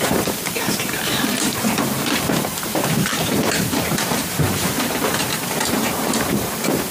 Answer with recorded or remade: remade